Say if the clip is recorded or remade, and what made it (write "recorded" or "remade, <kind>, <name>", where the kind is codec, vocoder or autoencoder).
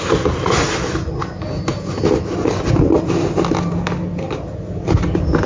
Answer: recorded